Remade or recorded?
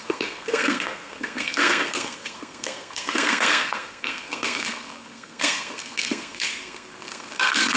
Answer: remade